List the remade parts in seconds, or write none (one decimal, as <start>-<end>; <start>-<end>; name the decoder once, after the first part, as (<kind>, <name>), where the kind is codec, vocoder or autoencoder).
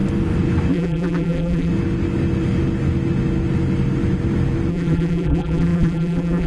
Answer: 0.7-1.7 (vocoder, BigVGAN v2); 4.7-6.5